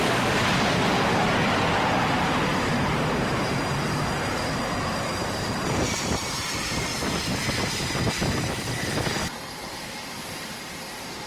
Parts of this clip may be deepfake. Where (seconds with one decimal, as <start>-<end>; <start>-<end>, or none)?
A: 0.0-6.9; 8.1-11.3